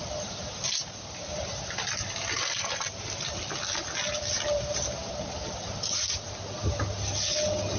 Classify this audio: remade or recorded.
recorded